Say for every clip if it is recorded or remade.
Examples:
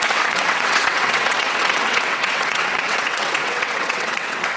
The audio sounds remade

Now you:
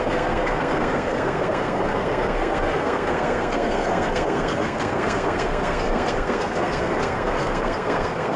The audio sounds remade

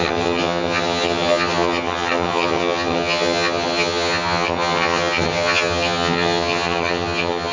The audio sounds remade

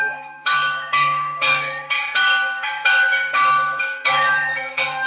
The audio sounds remade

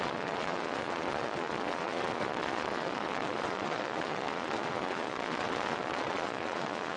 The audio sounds remade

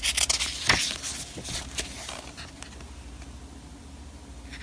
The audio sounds recorded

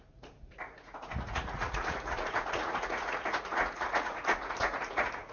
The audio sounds remade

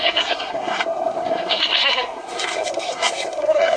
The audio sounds remade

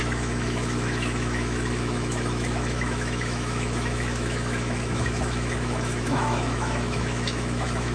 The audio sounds remade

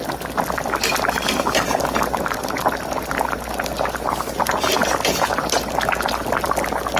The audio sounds recorded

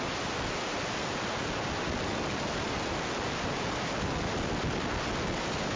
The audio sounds recorded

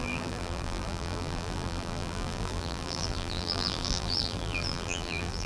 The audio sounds remade